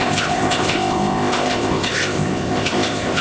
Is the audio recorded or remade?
remade